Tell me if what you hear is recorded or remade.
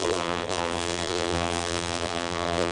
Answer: remade